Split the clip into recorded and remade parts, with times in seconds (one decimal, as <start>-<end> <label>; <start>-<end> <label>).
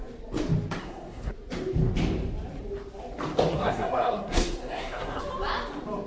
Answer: 0.0-0.8 recorded; 0.8-1.3 remade; 1.3-3.5 recorded; 3.5-5.2 remade; 5.2-6.1 recorded